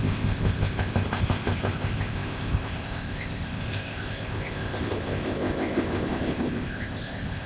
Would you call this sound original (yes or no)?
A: no